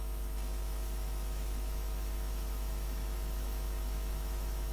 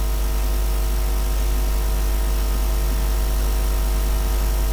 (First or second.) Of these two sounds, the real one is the second